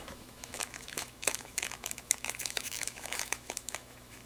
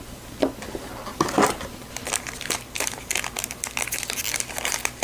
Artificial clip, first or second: first